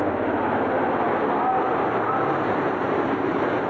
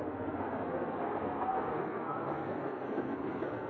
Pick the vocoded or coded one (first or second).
second